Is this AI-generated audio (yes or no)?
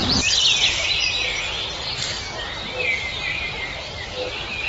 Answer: no